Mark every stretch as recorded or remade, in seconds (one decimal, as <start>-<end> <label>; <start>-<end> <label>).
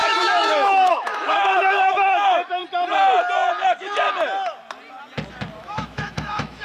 0.0-2.6 remade; 2.6-5.6 recorded; 5.6-6.6 remade